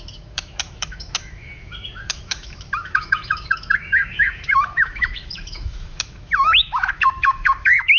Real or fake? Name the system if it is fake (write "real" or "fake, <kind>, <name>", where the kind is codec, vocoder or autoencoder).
fake, autoencoder, DAC-VAE